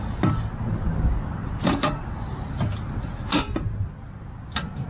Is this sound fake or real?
real